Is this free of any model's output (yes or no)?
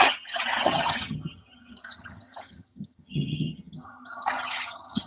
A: no